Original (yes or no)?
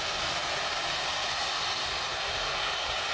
yes